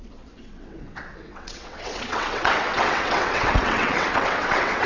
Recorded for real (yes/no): no